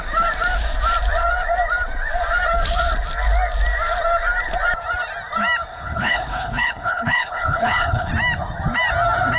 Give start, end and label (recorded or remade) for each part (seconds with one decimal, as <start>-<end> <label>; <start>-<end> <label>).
0.0-5.7 recorded; 5.7-8.1 remade; 8.1-9.4 recorded

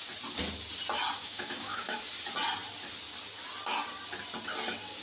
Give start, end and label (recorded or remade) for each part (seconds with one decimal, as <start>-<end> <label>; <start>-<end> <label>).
0.0-1.2 recorded; 1.2-2.0 remade; 2.0-5.0 recorded

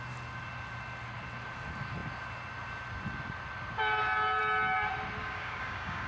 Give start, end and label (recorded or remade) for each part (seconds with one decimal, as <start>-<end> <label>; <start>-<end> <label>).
0.0-5.2 recorded; 5.2-6.1 remade

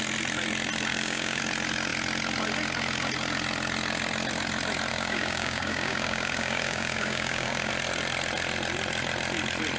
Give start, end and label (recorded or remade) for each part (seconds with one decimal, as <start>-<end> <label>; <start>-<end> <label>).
0.0-0.9 recorded; 0.9-1.4 remade; 1.4-4.9 recorded; 4.9-7.7 remade; 7.7-9.8 recorded

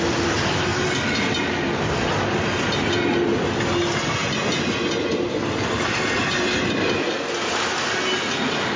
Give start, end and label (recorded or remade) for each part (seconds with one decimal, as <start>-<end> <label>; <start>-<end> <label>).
0.0-8.8 recorded

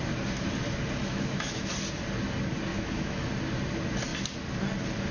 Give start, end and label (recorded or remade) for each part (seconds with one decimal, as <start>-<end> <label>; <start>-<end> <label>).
0.0-1.0 recorded; 1.0-1.7 remade; 1.7-2.7 recorded; 2.7-3.3 remade; 3.3-5.1 recorded